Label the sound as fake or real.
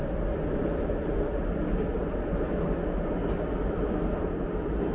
real